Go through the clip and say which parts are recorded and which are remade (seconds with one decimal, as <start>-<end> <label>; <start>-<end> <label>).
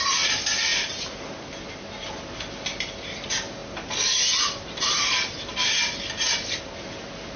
0.0-7.4 recorded